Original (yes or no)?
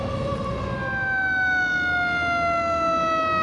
yes